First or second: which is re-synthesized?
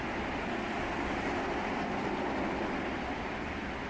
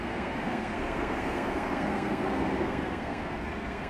second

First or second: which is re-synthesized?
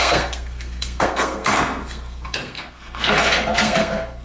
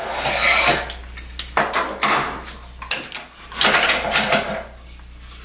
first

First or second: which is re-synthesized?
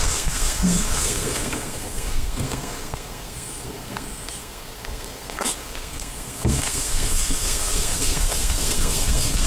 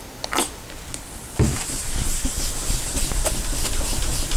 first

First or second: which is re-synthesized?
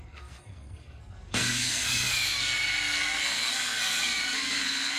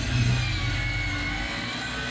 first